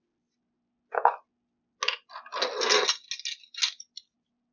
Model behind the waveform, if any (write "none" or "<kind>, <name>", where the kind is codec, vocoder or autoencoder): none